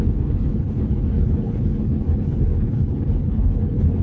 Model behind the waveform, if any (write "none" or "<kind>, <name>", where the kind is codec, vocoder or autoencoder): codec, HILCodec